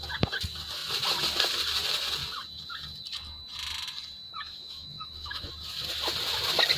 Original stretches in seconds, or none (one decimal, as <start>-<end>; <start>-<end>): 0.0-4.3; 5.5-6.8